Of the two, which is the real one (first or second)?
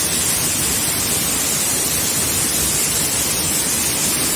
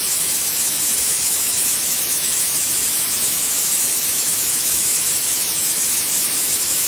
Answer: first